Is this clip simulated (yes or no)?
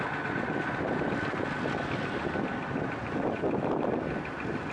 no